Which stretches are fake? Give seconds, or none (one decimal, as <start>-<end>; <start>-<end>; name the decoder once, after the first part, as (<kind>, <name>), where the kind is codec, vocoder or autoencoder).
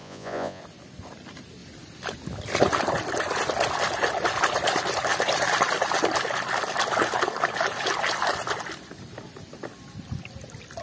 0.0-0.6 (vocoder, Vocos)